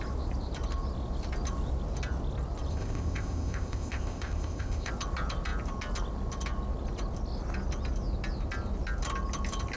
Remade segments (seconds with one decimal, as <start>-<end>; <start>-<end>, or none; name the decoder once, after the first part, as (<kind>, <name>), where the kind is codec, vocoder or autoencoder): 2.7-4.9 (codec, ZipCodec)